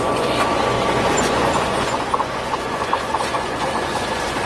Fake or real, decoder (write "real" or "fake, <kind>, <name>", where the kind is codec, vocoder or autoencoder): fake, vocoder, Vocos